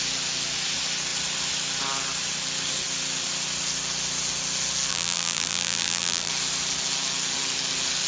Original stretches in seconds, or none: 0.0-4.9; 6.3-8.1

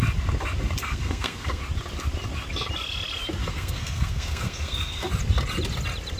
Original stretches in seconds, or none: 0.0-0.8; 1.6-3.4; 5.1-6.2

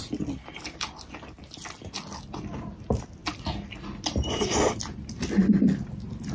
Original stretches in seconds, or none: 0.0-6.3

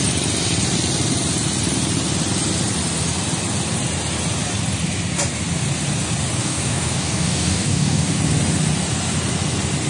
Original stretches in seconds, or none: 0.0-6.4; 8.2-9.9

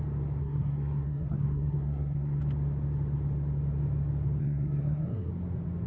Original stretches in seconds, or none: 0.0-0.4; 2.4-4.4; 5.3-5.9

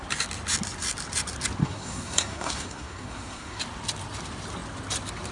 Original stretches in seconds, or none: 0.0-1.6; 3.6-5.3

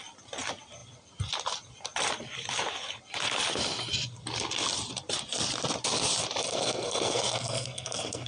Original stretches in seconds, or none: 0.0-6.4